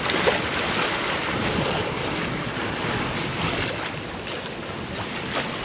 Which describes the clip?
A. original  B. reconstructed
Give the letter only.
A